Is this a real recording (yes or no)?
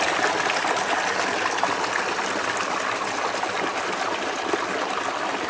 yes